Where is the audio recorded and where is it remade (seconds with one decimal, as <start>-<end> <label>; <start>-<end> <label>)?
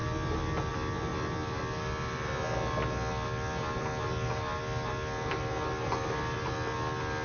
0.0-7.2 recorded